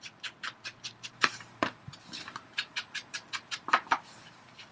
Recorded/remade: remade